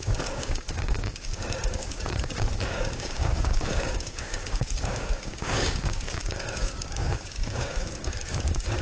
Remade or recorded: remade